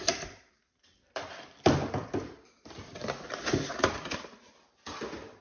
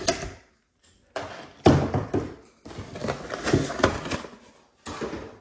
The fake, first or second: first